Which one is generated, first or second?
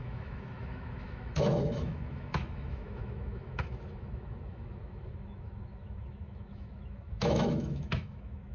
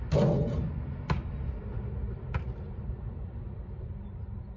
first